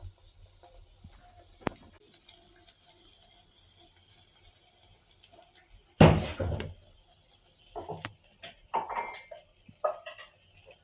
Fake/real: real